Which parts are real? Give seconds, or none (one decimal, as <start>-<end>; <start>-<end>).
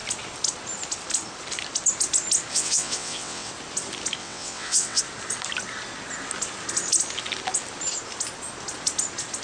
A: 0.0-2.5; 3.5-4.2; 5.0-9.4